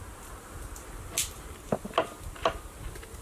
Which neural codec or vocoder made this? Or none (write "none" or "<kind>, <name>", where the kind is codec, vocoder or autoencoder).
none